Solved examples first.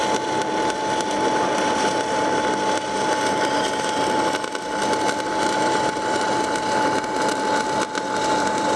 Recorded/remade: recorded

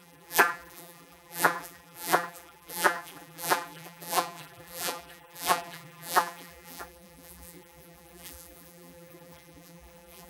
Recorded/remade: remade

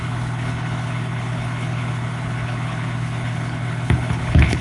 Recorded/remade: remade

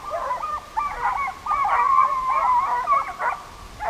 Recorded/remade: recorded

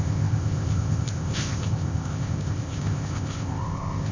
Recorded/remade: remade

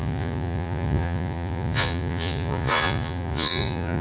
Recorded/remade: remade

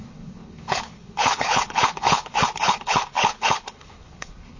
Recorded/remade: remade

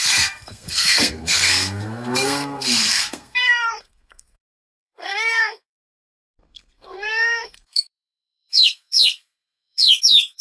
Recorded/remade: remade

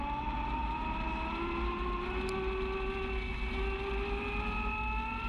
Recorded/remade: recorded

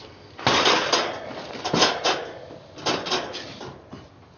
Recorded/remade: recorded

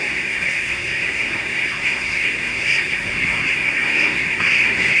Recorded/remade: remade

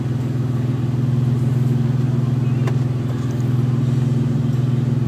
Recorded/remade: recorded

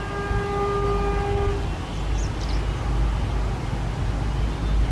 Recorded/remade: recorded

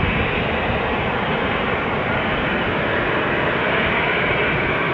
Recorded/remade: recorded